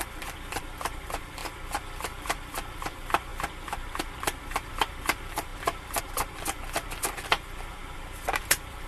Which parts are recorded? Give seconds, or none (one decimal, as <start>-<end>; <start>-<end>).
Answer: 1.4-2.1; 3.3-4.7; 5.5-6.0; 7.8-8.4